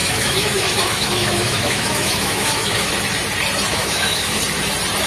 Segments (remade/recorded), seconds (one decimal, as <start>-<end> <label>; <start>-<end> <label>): 0.0-2.9 remade; 2.9-3.7 recorded; 3.7-4.4 remade; 4.4-5.1 recorded